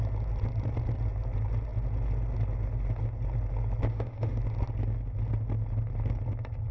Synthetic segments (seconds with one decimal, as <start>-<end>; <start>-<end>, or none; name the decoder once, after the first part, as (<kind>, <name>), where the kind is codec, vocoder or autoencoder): 3.9-4.4 (autoencoder, DAC-VAE)